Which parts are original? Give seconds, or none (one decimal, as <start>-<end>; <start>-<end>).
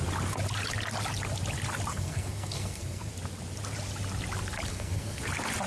0.0-1.9; 3.1-4.7; 5.2-5.7